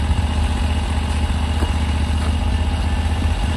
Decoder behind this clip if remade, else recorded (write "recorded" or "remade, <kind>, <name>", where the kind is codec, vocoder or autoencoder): recorded